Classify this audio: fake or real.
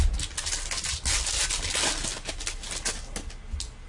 real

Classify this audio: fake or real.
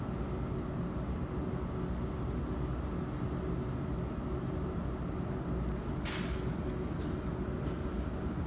real